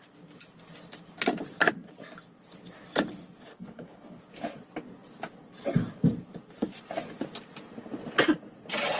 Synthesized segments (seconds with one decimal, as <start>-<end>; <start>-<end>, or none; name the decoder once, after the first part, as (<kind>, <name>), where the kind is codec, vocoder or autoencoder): 3.5-4.2 (codec, HILCodec)